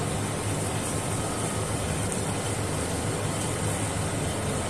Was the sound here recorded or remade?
recorded